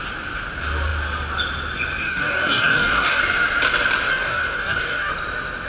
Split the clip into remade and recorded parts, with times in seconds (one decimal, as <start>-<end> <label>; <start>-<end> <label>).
0.0-2.0 recorded; 2.0-3.2 remade; 3.2-4.1 recorded; 4.1-5.1 remade; 5.1-5.7 recorded